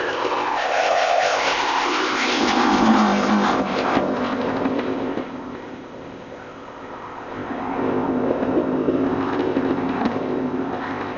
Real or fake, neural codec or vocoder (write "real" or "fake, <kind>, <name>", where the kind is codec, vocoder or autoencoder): fake, codec, ZipCodec